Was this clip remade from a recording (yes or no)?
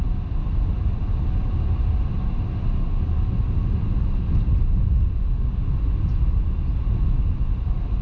no